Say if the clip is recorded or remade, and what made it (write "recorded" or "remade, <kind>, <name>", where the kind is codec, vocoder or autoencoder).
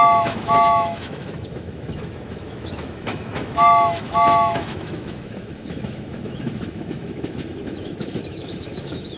remade, autoencoder, DAC-VAE